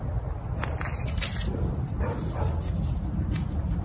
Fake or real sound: real